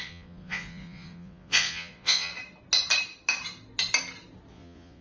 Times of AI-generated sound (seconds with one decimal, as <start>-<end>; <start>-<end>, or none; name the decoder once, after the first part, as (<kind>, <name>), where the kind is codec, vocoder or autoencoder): 0.0-2.3 (vocoder, Vocos); 4.5-5.0